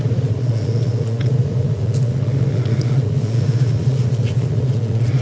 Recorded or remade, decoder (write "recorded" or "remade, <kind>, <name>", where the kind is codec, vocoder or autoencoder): remade, vocoder, Vocos